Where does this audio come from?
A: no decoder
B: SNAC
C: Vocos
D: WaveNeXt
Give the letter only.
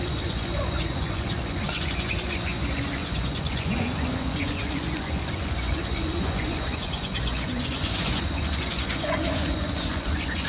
C